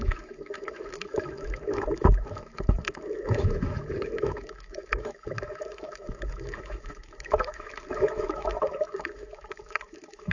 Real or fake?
fake